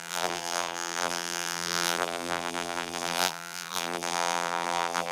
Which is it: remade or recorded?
remade